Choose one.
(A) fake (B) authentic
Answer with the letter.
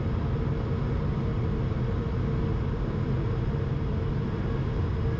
B